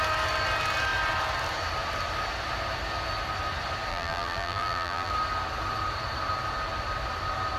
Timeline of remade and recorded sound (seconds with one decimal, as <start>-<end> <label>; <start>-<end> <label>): 0.0-3.9 recorded; 3.9-5.1 remade; 5.1-7.6 recorded